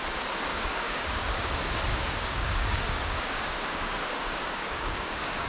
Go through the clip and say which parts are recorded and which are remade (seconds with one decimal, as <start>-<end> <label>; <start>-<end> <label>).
0.0-0.5 recorded; 0.5-1.5 remade; 1.5-1.9 recorded; 1.9-5.5 remade